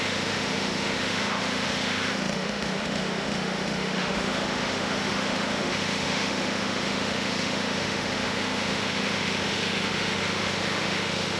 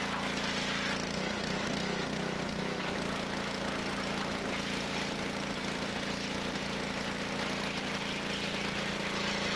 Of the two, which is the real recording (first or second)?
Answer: second